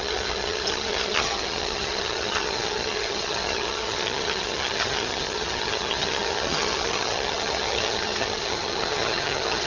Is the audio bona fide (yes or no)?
no